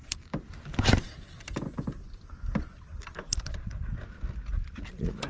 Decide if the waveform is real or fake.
real